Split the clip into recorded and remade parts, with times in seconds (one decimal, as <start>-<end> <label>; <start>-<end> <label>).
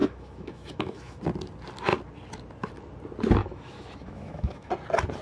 0.0-1.2 remade; 1.2-3.4 recorded; 3.4-4.7 remade; 4.7-5.2 recorded